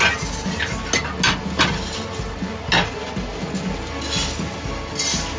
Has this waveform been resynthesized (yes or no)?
no